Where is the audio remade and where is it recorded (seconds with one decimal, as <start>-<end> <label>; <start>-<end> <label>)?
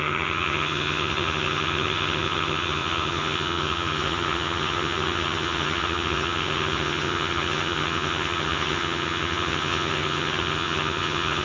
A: 0.0-11.4 remade